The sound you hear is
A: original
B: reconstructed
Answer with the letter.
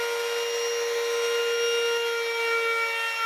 A